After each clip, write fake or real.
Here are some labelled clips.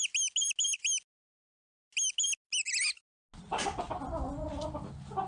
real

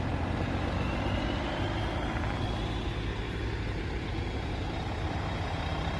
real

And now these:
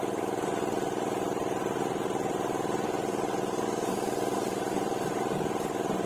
fake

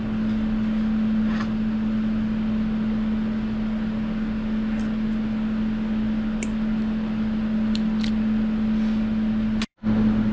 real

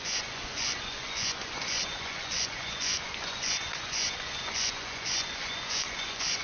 fake